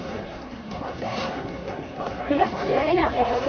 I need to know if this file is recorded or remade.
remade